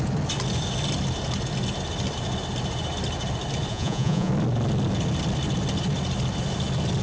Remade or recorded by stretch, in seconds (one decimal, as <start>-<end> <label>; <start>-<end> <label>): 0.0-3.7 recorded; 3.7-4.3 remade; 4.3-7.0 recorded